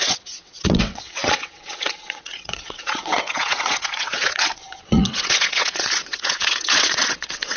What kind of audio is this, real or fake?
fake